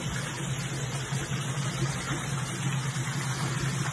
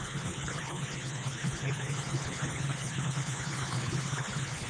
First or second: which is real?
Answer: first